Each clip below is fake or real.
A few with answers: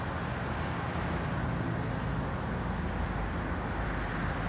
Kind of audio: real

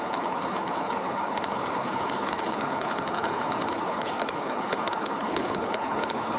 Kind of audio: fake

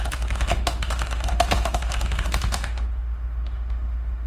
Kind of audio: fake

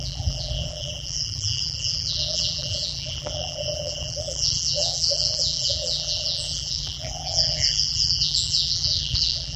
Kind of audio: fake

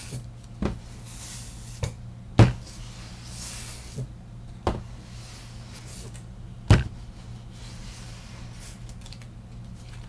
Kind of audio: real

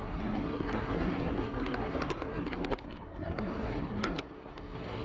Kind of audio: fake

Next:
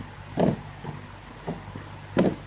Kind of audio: real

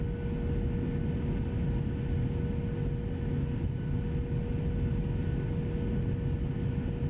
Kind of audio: real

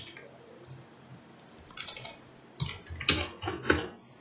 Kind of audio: real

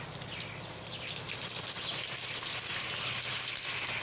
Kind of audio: real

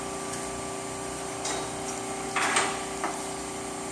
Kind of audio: fake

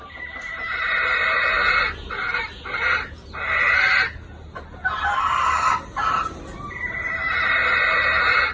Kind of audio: real